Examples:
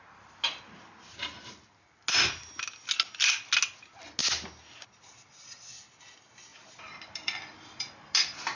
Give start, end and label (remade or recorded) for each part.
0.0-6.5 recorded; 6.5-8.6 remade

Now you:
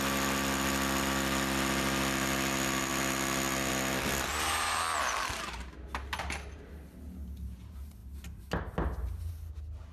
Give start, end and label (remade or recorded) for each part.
0.0-9.9 recorded

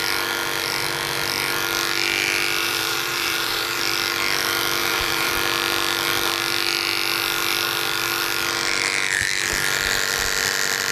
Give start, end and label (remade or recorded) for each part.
0.0-2.6 recorded; 2.6-3.8 remade; 3.8-4.8 recorded; 4.8-5.3 remade; 5.3-10.9 recorded

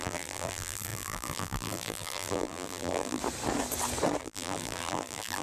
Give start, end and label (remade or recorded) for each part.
0.0-3.2 remade; 3.2-4.2 recorded; 4.2-5.4 remade

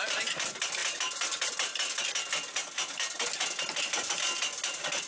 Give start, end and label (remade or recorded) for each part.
0.0-5.1 recorded

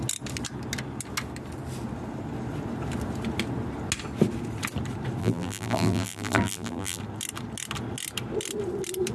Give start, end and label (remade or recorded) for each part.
0.0-5.2 recorded; 5.2-7.0 remade; 7.0-9.1 recorded

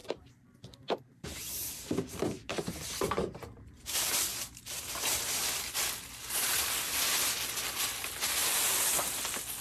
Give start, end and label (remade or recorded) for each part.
0.0-5.2 remade; 5.2-8.4 recorded; 8.4-9.2 remade; 9.2-9.6 recorded

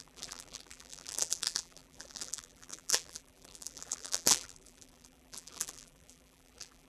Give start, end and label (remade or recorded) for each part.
0.0-6.9 remade